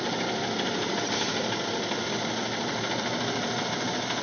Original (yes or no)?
yes